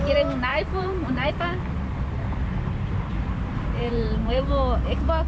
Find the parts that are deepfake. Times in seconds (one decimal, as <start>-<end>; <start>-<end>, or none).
0.5-1.3; 3.1-4.5